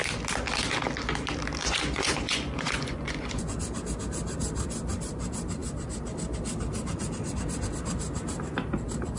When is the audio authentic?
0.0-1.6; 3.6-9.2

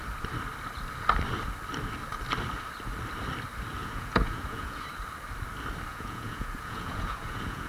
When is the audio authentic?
0.0-3.8; 4.8-5.9

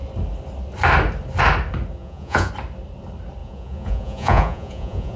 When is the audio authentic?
0.0-2.0; 2.5-3.4

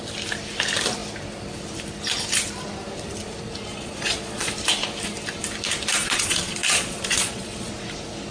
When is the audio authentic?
0.0-3.7; 4.5-6.0; 7.7-8.3

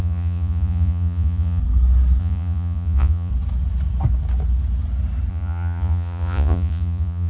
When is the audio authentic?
1.6-2.2; 3.3-5.3

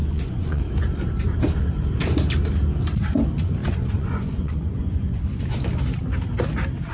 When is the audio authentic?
0.6-3.6; 5.2-6.9

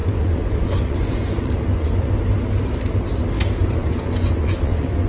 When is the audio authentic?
2.1-3.6

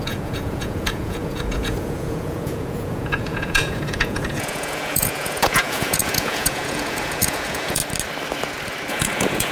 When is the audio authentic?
7.8-8.9